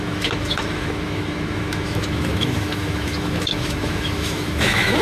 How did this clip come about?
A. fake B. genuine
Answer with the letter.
A